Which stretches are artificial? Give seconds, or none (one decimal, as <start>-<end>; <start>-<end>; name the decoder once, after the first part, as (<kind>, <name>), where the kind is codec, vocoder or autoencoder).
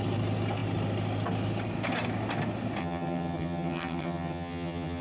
2.8-5.0 (vocoder, HiFi-GAN)